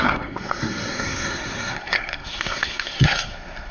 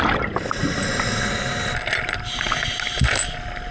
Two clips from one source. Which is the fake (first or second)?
first